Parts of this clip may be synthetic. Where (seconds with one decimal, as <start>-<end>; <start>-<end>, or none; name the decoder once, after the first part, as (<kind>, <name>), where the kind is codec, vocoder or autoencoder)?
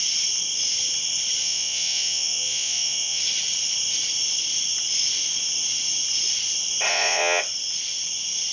1.4-3.2 (vocoder, Vocos); 6.9-7.4